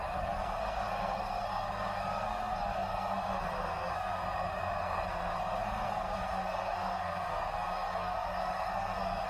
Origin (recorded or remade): remade